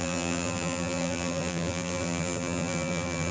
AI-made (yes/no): yes